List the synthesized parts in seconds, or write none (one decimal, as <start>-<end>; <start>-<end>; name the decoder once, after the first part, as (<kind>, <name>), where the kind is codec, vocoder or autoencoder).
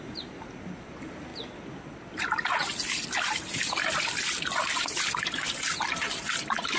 none